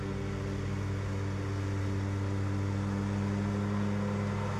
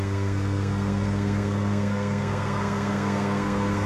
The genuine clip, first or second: first